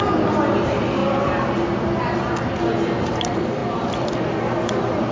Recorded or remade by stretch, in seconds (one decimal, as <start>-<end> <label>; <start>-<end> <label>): 0.0-1.0 remade; 1.0-3.0 recorded; 3.0-3.6 remade; 3.6-4.4 recorded; 4.4-5.1 remade